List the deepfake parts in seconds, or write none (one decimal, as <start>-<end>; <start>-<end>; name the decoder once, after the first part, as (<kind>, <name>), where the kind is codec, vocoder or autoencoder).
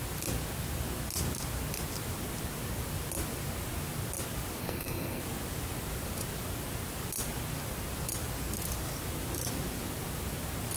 4.6-5.2 (codec, SNAC)